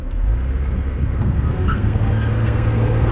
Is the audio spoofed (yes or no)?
yes